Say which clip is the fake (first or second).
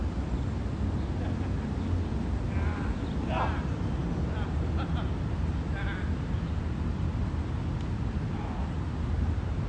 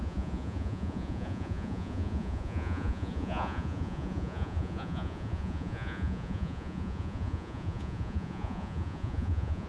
second